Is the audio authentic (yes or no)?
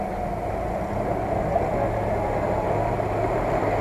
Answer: yes